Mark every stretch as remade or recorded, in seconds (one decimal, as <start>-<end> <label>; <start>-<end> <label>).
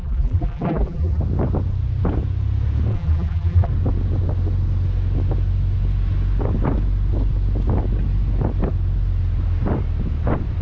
0.0-1.2 remade; 1.2-2.9 recorded; 2.9-3.7 remade; 3.7-10.6 recorded